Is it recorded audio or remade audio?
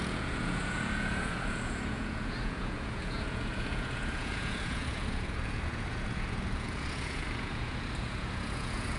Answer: remade